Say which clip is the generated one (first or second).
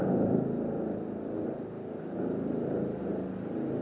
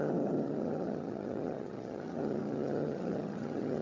second